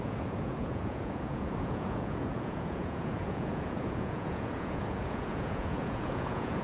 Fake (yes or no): yes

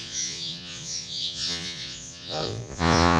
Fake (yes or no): yes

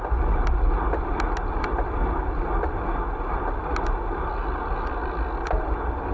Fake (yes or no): no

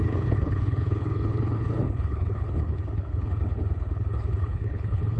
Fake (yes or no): yes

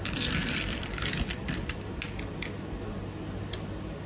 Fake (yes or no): no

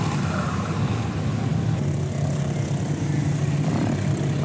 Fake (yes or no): no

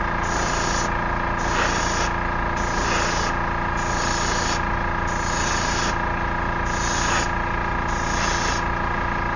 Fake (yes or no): no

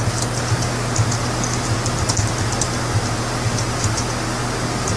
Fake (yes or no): no